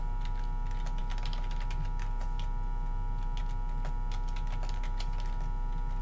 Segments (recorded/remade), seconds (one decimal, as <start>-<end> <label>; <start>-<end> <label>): 0.0-6.0 recorded